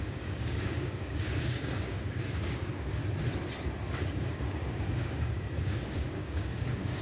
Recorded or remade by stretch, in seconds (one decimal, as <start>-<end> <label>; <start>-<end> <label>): 0.0-3.0 remade; 3.0-3.9 recorded; 3.9-7.0 remade